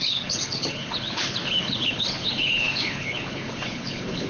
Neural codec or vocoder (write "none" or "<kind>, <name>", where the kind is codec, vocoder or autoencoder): codec, HILCodec